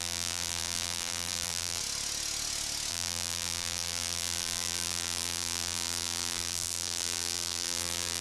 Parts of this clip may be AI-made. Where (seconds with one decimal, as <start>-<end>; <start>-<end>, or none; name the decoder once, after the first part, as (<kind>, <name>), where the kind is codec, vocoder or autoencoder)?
0.0-1.8 (vocoder, BigVGAN v2); 2.9-8.2